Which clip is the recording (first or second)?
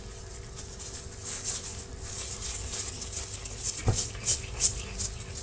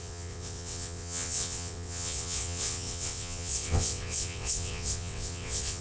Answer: first